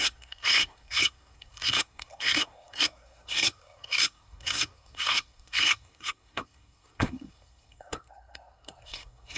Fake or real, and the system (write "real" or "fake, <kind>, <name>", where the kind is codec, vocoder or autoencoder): fake, codec, SNAC